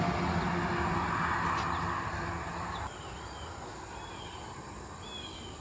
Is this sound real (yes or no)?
yes